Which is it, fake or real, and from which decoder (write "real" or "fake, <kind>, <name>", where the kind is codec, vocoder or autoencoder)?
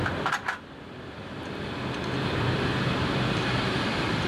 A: fake, vocoder, BigVGAN v2